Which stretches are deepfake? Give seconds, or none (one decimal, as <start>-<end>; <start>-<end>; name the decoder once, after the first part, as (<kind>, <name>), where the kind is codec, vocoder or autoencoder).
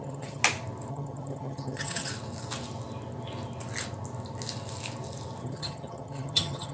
0.0-0.4 (vocoder, HiFi-GAN); 0.9-2.1; 5.4-6.7